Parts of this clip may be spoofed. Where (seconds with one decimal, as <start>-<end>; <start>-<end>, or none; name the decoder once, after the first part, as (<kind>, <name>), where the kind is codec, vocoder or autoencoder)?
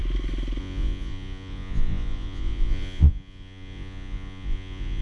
0.6-5.0 (vocoder, Vocos)